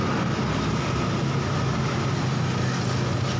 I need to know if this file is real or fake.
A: real